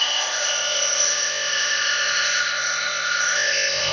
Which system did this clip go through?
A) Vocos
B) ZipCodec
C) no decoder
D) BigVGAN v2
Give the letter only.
B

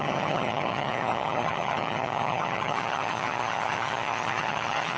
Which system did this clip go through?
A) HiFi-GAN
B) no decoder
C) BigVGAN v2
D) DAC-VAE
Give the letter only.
A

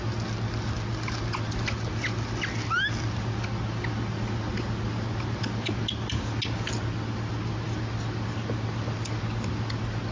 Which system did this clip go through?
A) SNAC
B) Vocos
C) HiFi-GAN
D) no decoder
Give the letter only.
D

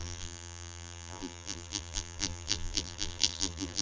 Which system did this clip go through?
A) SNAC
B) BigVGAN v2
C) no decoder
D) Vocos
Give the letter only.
B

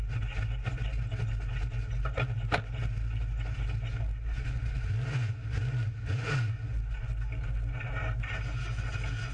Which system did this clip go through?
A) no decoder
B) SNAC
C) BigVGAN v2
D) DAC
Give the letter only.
A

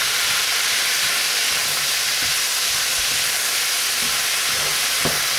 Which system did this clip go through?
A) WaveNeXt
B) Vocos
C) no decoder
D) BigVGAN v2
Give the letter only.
C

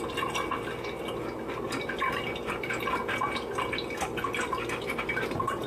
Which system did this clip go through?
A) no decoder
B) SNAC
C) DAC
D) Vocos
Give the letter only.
A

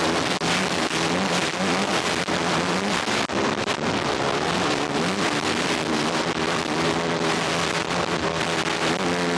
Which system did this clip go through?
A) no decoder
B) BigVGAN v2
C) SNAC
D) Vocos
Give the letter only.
A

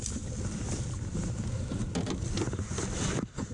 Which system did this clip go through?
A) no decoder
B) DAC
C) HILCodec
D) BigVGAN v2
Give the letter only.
D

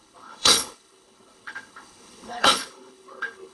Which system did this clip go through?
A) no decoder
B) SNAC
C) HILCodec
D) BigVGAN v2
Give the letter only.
C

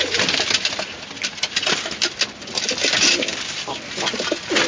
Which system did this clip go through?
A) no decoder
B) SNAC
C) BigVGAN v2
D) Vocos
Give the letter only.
A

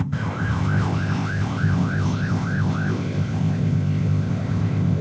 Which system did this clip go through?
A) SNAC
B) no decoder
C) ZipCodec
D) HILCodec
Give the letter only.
C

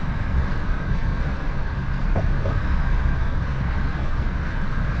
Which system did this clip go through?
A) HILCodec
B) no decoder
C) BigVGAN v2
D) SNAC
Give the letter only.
D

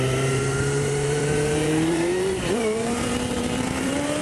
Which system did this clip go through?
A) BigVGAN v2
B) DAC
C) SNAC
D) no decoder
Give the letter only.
A